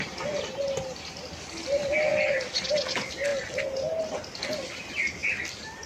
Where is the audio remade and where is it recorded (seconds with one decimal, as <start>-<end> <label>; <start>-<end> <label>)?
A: 0.0-2.1 recorded; 2.1-2.9 remade; 2.9-5.9 recorded